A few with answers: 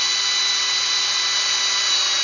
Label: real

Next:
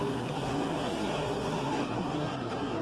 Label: fake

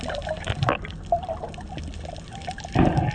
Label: real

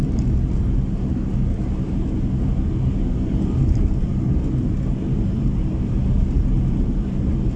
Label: real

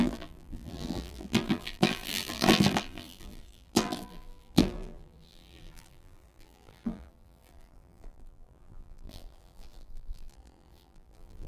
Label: fake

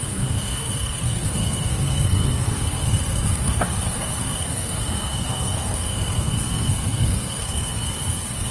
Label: fake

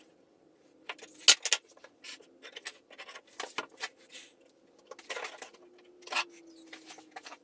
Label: real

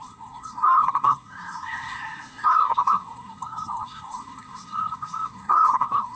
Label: fake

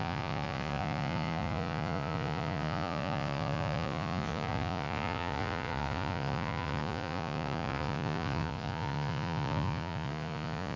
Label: fake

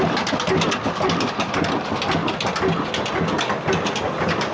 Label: real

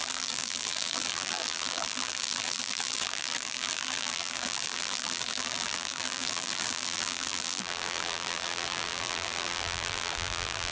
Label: fake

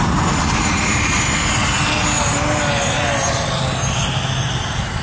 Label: real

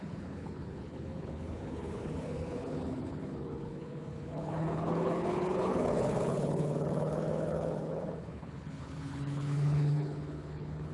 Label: fake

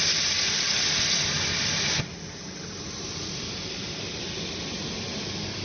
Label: real